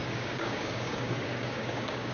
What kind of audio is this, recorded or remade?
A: remade